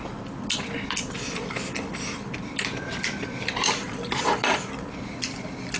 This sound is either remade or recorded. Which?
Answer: recorded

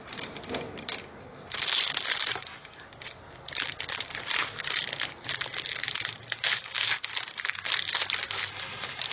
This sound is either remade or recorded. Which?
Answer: recorded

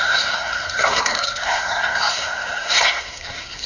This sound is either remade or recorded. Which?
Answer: remade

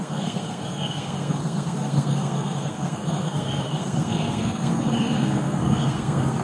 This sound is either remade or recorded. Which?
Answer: remade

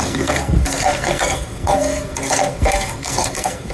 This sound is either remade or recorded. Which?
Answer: remade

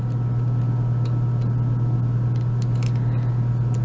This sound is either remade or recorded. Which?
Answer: recorded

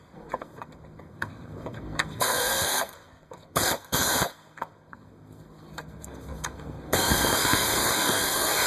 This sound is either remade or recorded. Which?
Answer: remade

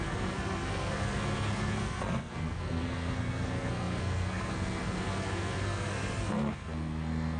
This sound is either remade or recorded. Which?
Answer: remade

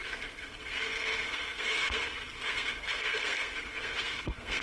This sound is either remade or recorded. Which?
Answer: remade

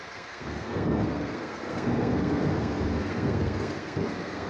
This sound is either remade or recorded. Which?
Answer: remade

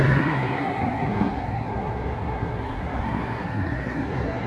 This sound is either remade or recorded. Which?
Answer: remade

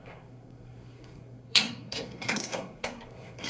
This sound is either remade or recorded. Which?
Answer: remade